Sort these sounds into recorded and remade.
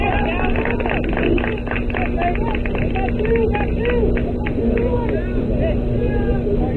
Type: recorded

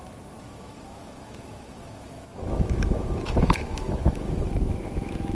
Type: remade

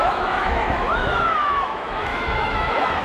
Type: remade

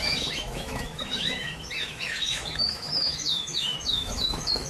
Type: remade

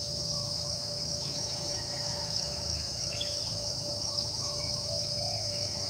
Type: remade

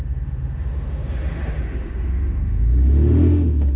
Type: remade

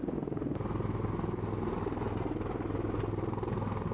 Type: recorded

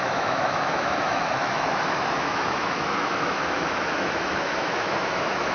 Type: remade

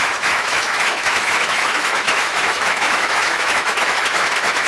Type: remade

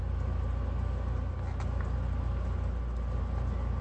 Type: recorded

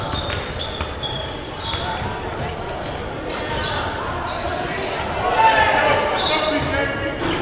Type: recorded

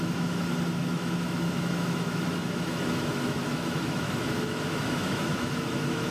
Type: remade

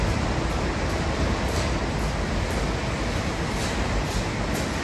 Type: recorded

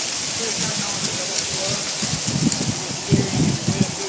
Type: recorded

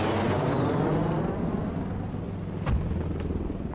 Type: recorded